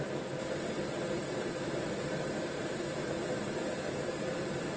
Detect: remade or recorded remade